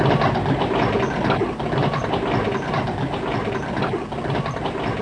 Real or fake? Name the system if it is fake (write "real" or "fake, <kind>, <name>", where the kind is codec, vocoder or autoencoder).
real